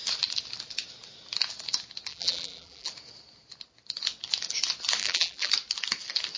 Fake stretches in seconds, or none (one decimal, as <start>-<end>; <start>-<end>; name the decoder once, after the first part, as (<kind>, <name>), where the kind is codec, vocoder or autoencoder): 2.1-2.9 (vocoder, BigVGAN v2); 5.0-5.5